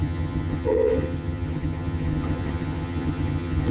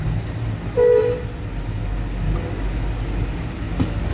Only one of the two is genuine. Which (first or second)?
second